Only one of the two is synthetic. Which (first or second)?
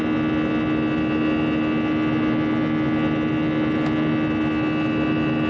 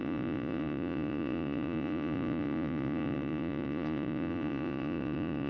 second